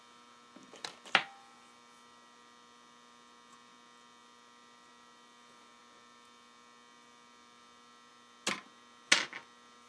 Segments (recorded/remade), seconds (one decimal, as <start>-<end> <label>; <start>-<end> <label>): 0.0-9.9 recorded